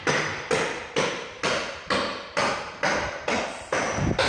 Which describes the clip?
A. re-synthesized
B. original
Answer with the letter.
B